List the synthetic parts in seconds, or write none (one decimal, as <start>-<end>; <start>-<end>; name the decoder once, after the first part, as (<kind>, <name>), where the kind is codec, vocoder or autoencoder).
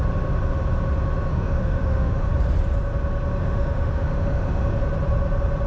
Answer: 1.3-2.3 (autoencoder, DAC-VAE); 3.4-4.8